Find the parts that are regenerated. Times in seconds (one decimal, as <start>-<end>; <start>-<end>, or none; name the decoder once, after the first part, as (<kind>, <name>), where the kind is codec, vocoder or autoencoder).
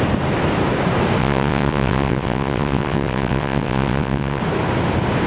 1.2-4.4 (vocoder, WaveNeXt)